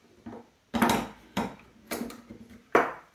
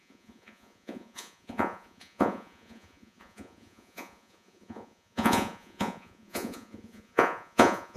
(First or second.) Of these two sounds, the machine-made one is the second